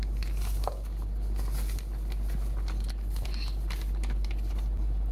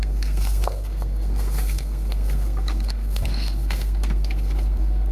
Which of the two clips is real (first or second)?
first